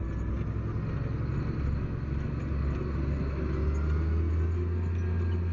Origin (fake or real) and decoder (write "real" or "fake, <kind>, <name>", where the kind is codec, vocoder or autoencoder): real